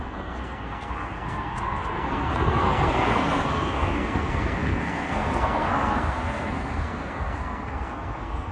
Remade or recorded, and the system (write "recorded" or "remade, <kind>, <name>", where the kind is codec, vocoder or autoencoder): remade, codec, SNAC